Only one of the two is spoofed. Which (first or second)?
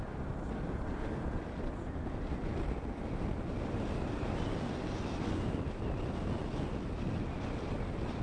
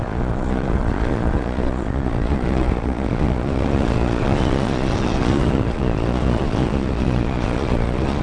second